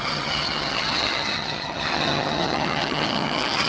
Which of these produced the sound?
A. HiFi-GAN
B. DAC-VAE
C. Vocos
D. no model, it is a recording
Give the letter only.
A